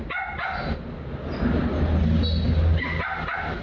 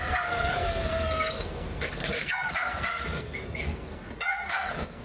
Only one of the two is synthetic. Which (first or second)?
second